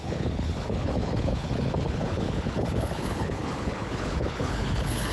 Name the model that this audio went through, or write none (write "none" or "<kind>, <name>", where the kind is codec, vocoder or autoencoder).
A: codec, HILCodec